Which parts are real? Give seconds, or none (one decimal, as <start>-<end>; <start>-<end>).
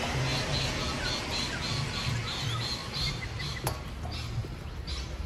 0.0-5.3